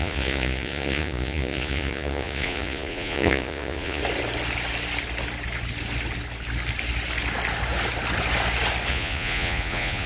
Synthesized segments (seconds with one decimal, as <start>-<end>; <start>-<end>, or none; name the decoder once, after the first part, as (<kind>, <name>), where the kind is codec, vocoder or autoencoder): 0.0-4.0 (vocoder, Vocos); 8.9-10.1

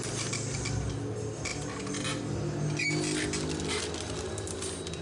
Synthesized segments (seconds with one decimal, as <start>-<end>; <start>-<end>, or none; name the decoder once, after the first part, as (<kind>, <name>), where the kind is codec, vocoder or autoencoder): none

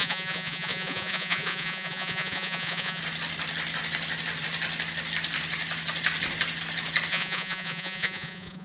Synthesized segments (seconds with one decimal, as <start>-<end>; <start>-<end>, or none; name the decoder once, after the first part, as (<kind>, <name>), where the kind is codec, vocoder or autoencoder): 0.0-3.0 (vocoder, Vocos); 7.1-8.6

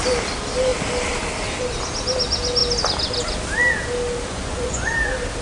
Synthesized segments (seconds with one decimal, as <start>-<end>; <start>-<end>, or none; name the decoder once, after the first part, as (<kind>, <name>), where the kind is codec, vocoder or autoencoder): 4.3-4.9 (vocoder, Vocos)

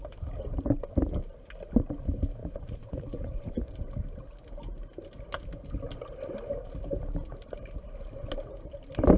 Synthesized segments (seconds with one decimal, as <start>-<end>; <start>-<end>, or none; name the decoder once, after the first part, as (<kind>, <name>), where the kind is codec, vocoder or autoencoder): 2.4-3.7 (vocoder, Vocos)

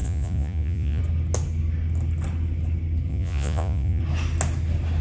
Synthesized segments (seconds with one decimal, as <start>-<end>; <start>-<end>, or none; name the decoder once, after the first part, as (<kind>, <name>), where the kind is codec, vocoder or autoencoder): 0.0-1.0 (vocoder, Vocos); 3.1-4.0